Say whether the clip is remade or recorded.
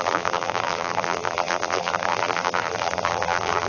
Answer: remade